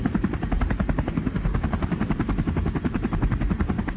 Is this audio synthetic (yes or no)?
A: yes